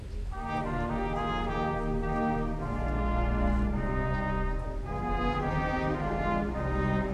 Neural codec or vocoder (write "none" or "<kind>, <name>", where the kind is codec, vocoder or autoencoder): none